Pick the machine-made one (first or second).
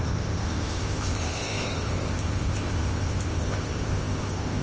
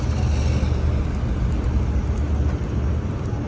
first